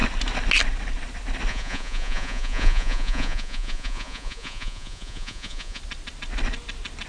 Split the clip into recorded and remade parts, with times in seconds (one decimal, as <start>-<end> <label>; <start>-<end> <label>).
0.0-1.5 recorded; 1.5-5.8 remade; 5.8-7.1 recorded